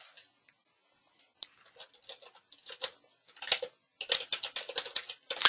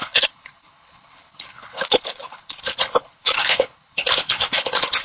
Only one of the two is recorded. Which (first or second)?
first